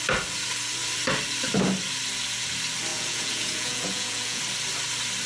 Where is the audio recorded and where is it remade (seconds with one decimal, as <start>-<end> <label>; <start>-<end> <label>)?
0.0-2.9 recorded; 2.9-4.4 remade; 4.4-5.3 recorded